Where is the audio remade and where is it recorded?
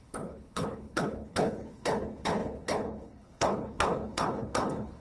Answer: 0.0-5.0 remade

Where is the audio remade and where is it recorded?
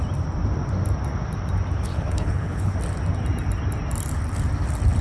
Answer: 0.0-1.9 recorded; 1.9-2.7 remade; 2.7-5.0 recorded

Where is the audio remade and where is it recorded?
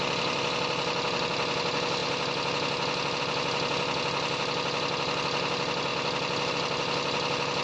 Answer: 0.0-7.6 recorded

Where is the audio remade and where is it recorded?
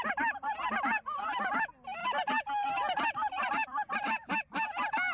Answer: 0.0-5.1 recorded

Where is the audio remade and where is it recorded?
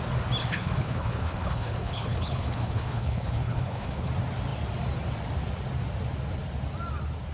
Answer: 0.0-0.4 recorded; 0.4-4.1 remade; 4.1-7.3 recorded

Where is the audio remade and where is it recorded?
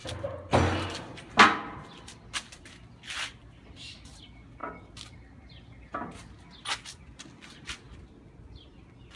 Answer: 0.0-9.2 recorded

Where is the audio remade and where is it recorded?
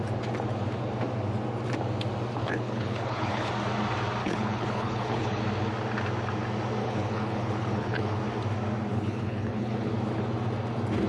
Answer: 0.0-2.4 recorded; 2.4-3.5 remade; 3.5-4.2 recorded; 4.2-5.4 remade; 5.4-6.8 recorded; 6.8-8.2 remade; 8.2-8.9 recorded; 8.9-9.9 remade; 9.9-11.1 recorded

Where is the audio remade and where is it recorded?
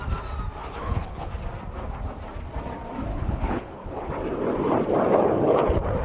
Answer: 0.0-0.6 recorded; 0.6-1.3 remade; 1.3-3.1 recorded; 3.1-4.1 remade; 4.1-6.0 recorded